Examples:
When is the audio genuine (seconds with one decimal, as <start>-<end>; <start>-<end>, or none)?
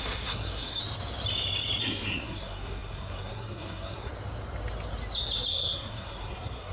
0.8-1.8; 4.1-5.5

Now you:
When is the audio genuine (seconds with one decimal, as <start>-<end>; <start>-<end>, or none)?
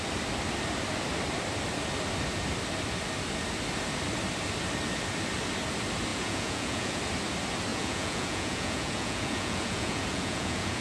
0.0-6.1; 7.0-7.7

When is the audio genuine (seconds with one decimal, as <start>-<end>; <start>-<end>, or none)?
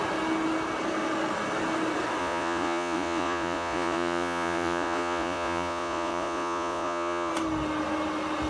0.0-2.2; 7.3-8.5